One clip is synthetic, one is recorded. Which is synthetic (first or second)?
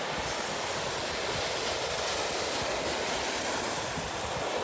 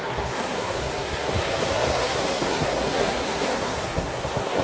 second